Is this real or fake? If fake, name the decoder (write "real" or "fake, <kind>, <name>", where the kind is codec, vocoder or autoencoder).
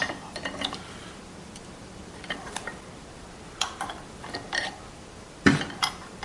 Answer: fake, vocoder, BigVGAN v2